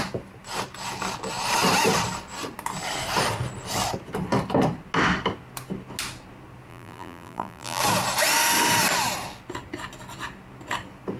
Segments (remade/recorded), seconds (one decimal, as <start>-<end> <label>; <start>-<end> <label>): 0.0-6.7 recorded; 6.7-7.8 remade; 7.8-11.2 recorded